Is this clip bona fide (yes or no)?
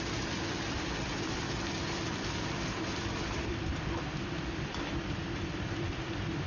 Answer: no